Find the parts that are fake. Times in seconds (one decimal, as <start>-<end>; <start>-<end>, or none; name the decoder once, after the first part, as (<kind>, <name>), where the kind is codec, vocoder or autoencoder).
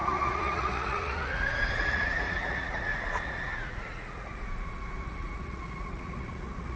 0.0-6.8 (vocoder, Vocos)